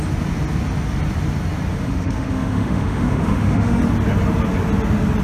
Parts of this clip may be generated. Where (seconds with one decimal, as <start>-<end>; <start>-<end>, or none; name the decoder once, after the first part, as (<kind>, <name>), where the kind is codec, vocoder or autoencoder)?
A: 1.7-3.8 (autoencoder, DAC-VAE)